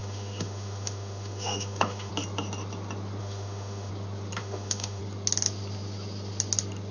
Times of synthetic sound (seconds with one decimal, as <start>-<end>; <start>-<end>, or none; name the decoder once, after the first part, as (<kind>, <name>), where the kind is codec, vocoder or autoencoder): 0.0-2.1 (autoencoder, DAC-VAE); 3.2-3.9; 4.4-5.0